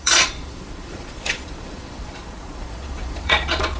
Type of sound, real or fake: fake